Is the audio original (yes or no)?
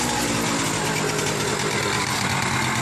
yes